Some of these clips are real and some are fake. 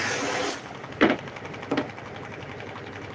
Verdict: real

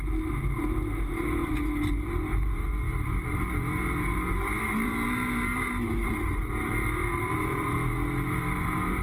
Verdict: fake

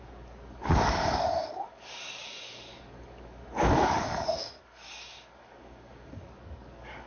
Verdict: fake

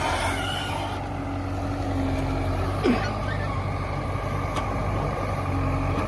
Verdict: real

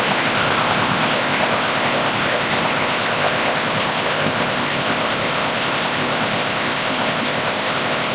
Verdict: fake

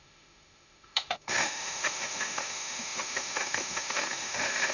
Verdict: fake